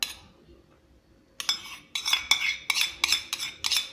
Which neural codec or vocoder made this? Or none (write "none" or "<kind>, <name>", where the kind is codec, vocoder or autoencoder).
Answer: none